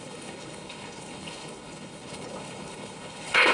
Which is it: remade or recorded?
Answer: remade